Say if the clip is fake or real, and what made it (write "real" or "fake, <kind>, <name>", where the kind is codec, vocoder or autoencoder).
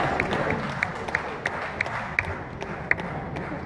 real